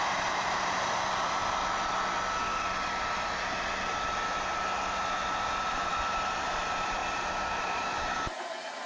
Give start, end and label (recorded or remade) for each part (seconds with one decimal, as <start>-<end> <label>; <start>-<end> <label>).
0.0-1.4 remade; 1.4-5.7 recorded; 5.7-7.0 remade; 7.0-7.6 recorded; 7.6-8.9 remade